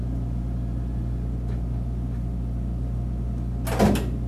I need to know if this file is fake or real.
real